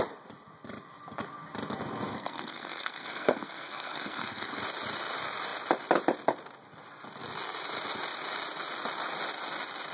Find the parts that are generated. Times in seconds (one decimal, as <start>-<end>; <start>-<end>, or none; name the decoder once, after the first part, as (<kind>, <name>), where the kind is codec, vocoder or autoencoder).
2.1-4.6 (codec, SNAC)